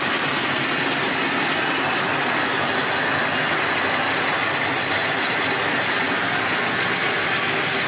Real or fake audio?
real